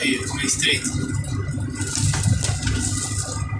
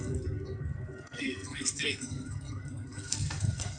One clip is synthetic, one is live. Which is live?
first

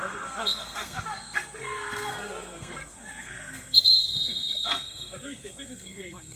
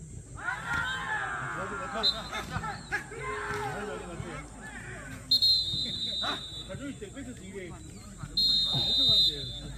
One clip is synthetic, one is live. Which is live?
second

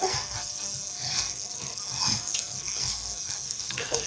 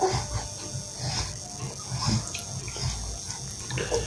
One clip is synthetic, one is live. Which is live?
second